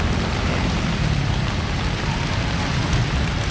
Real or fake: fake